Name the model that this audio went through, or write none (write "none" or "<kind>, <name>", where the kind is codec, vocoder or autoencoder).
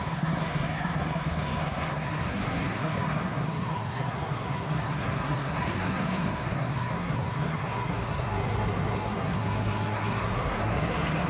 codec, SNAC